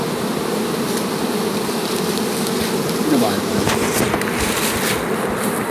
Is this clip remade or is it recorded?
remade